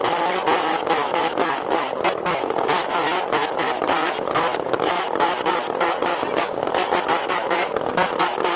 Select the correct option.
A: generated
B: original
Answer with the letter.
B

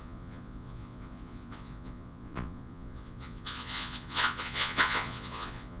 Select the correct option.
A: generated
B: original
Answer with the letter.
A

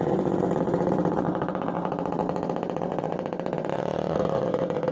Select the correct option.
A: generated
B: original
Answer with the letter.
A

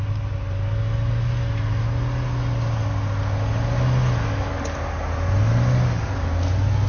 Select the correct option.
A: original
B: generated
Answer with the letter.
A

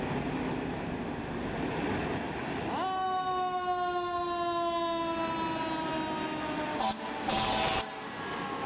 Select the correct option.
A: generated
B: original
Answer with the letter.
B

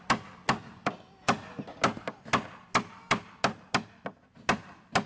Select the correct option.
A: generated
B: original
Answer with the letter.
B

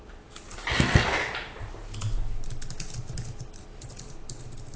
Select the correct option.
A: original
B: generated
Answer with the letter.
A